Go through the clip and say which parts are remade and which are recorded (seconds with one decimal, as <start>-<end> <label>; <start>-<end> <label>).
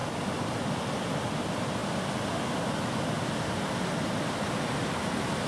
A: 0.0-5.5 recorded